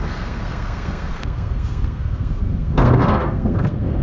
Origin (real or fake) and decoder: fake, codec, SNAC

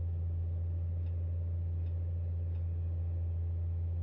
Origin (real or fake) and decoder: real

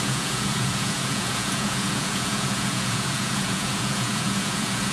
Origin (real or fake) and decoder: fake, vocoder, Vocos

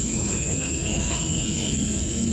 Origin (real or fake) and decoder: fake, codec, SNAC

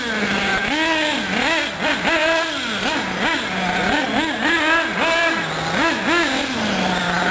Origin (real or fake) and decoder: real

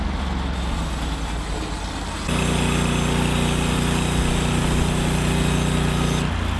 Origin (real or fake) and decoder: real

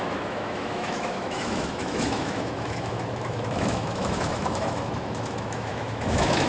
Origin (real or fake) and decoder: fake, autoencoder, DAC-VAE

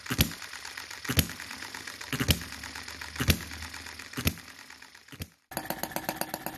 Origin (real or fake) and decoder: real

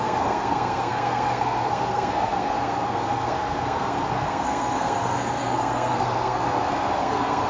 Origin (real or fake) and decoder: fake, codec, SNAC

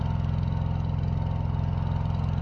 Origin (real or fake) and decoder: real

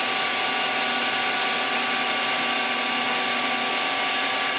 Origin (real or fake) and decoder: real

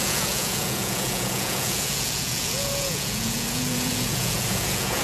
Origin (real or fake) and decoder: fake, vocoder, Vocos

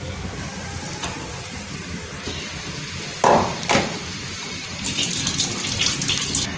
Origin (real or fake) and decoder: real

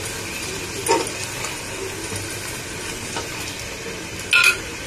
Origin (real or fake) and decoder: real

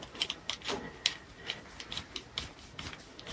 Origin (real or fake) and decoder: real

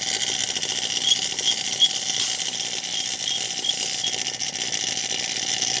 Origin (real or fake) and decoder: real